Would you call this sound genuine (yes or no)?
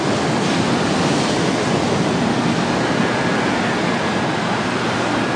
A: yes